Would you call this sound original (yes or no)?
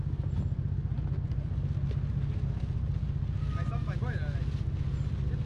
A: yes